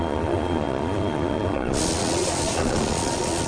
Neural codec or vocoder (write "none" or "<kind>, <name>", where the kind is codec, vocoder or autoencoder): vocoder, Vocos